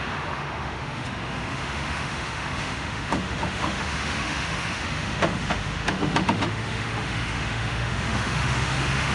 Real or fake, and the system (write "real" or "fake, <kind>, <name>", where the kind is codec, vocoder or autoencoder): fake, autoencoder, DAC-VAE